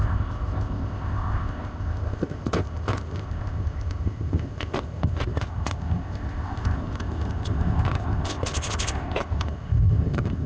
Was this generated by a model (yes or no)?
yes